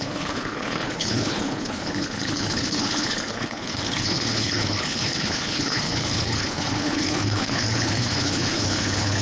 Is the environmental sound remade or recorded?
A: remade